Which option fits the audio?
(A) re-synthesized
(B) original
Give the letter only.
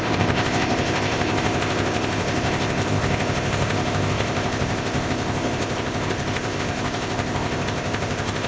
A